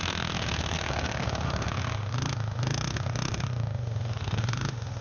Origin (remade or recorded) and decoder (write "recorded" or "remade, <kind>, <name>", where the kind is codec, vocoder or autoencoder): remade, autoencoder, DAC-VAE